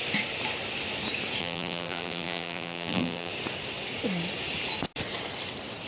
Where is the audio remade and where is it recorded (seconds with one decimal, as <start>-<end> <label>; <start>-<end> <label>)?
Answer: 0.0-1.4 recorded; 1.4-3.3 remade; 3.3-5.9 recorded